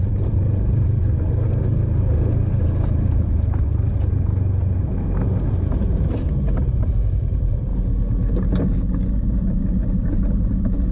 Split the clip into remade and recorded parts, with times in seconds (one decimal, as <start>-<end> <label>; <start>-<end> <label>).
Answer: 0.0-4.3 remade; 4.3-6.1 recorded; 6.1-7.7 remade; 7.7-9.6 recorded; 9.6-10.9 remade